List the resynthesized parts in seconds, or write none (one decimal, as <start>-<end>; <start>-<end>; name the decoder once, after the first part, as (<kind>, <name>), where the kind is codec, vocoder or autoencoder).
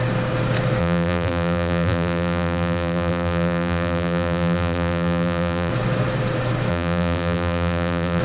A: 0.8-5.7 (vocoder, BigVGAN v2); 6.7-8.2